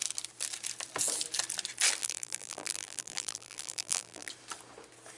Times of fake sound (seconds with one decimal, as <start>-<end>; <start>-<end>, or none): 2.0-4.3

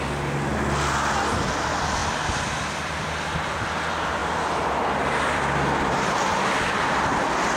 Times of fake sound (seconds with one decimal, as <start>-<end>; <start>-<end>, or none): 2.0-3.3; 4.2-6.5

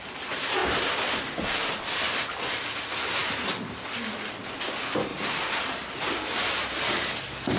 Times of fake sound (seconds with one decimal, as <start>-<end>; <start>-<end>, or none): 0.6-1.3; 5.1-6.1

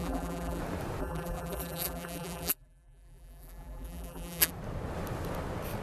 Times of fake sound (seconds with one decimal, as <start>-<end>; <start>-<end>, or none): 0.0-0.6; 1.0-4.5

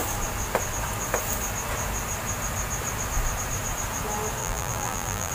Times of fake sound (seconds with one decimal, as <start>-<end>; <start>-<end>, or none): 4.4-5.3

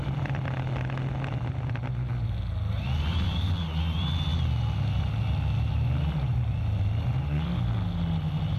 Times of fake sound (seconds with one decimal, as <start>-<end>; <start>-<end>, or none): none

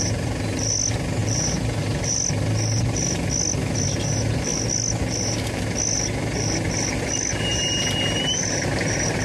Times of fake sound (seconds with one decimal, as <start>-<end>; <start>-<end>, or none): 7.3-9.2